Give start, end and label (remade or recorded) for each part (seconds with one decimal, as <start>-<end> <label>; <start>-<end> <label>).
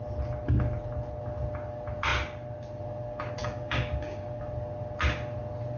0.0-3.4 recorded; 3.4-4.4 remade; 4.4-5.8 recorded